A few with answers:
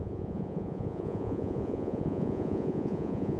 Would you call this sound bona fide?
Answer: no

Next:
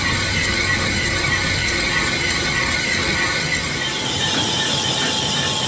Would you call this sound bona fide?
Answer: yes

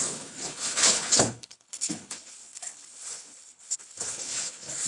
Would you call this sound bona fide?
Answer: no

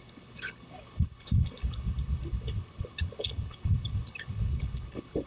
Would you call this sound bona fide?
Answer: no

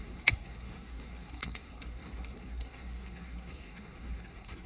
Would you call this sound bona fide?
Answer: no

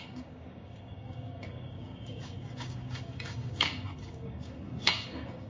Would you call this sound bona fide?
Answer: no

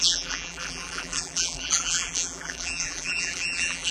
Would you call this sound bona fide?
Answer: no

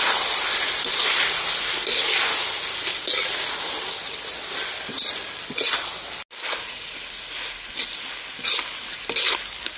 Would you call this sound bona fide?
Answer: yes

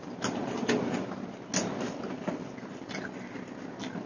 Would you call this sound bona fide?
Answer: yes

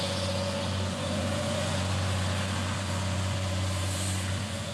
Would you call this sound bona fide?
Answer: no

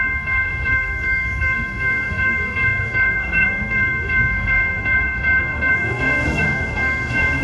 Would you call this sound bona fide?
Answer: no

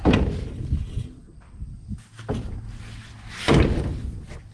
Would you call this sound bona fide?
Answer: yes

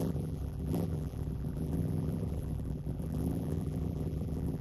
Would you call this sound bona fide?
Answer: no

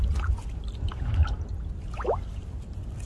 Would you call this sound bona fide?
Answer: yes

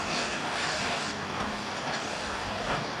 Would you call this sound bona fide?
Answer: no